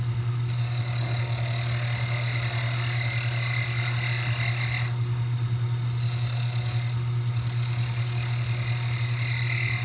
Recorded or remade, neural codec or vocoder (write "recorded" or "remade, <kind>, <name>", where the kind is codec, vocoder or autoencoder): recorded